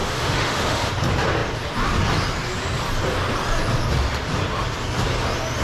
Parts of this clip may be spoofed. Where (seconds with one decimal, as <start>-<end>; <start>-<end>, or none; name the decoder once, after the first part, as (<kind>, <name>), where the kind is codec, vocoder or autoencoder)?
0.0-0.9 (autoencoder, DAC-VAE)